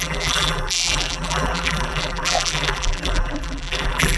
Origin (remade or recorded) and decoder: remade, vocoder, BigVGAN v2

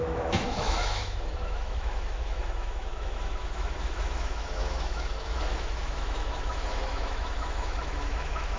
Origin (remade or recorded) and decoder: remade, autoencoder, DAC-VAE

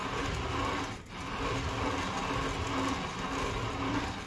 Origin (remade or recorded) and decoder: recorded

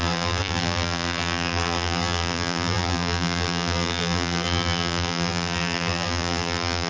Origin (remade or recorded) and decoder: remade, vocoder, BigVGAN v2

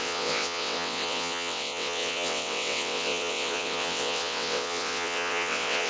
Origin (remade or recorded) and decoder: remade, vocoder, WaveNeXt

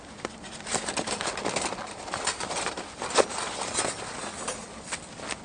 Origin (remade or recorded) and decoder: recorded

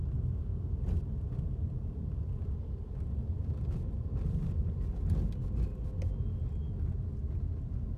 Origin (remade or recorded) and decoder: recorded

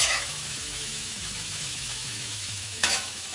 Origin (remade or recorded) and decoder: remade, autoencoder, DAC-VAE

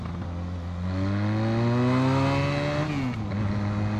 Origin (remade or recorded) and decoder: recorded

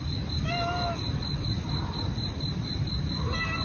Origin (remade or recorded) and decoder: recorded